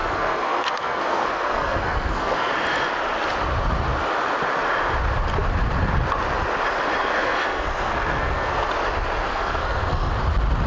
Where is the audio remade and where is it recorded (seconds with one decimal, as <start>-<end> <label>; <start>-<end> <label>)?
0.0-2.5 remade; 2.5-7.0 recorded; 7.0-8.7 remade; 8.7-9.3 recorded; 9.3-10.1 remade; 10.1-10.7 recorded